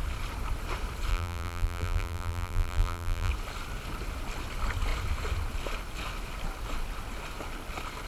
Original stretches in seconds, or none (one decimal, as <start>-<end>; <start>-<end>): 0.0-1.1; 3.3-8.1